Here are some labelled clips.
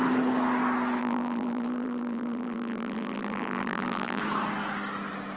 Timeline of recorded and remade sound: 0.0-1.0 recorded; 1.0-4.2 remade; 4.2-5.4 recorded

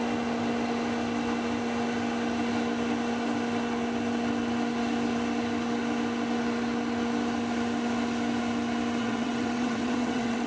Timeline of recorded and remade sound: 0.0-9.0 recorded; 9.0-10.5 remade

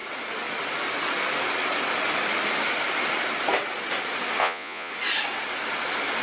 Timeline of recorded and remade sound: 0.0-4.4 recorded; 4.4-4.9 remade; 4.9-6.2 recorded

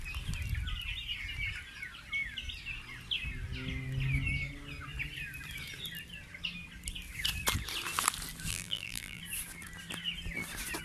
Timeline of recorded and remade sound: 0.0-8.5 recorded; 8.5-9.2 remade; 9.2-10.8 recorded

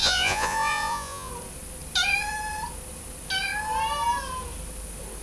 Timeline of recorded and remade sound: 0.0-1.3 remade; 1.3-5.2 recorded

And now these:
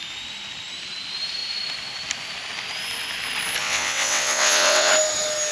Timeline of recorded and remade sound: 0.0-3.6 recorded; 3.6-4.9 remade; 4.9-5.5 recorded

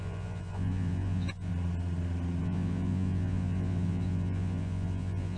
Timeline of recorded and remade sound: 0.0-1.5 remade; 1.5-2.4 recorded; 2.4-5.4 remade